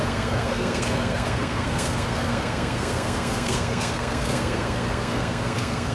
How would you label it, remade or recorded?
remade